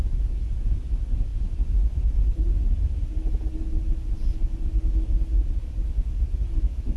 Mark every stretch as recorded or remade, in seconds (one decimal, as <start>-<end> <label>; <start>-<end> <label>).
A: 0.0-1.3 recorded; 1.3-2.5 remade; 2.5-5.4 recorded; 5.4-6.3 remade; 6.3-7.0 recorded